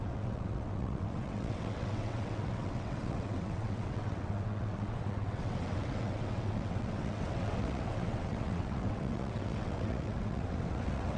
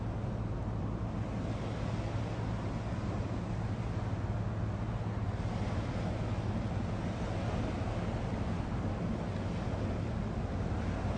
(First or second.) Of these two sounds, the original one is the second